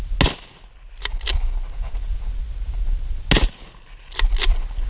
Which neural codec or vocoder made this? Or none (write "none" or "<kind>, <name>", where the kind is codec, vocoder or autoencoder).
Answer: none